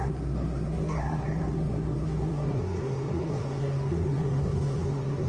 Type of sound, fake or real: fake